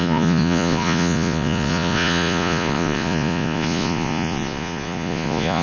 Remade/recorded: remade